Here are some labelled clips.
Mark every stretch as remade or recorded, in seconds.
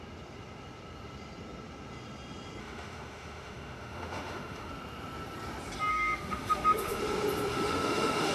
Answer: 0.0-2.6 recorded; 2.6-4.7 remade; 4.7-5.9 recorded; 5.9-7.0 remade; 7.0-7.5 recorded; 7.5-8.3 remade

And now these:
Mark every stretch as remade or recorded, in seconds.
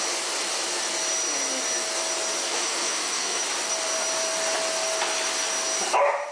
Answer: 0.0-2.4 recorded; 2.4-3.4 remade; 3.4-6.3 recorded